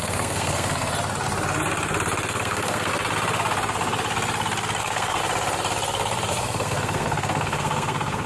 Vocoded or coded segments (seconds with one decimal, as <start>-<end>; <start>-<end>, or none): 0.0-0.8; 2.3-2.9; 4.8-5.2; 6.3-8.3